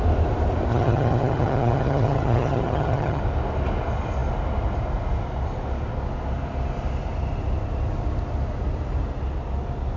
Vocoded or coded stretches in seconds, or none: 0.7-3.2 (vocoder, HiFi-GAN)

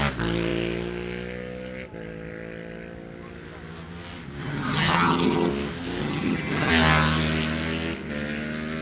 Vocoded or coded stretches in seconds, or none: 4.4-5.5 (vocoder, HiFi-GAN); 6.0-6.7

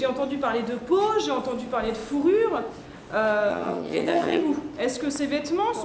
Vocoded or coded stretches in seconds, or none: 3.5-4.4 (vocoder, HiFi-GAN)

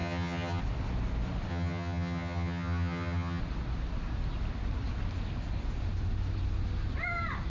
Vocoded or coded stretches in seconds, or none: 0.0-0.6 (vocoder, HiFi-GAN); 1.5-3.4